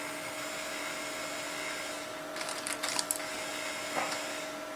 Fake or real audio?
real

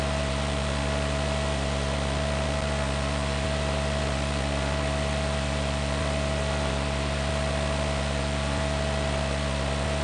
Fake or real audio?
real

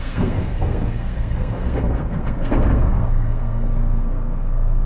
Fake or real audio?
fake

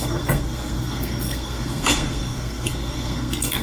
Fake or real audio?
fake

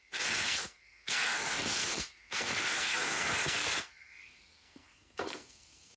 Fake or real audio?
fake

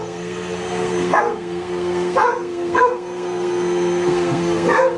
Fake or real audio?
fake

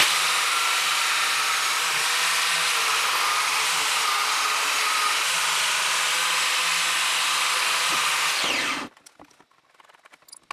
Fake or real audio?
real